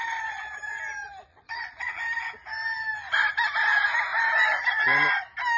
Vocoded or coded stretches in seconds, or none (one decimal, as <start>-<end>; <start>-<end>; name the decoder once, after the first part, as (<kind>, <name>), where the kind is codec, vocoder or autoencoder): 1.3-2.0 (vocoder, Vocos)